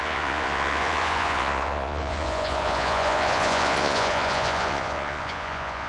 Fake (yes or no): yes